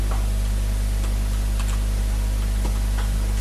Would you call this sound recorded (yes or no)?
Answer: yes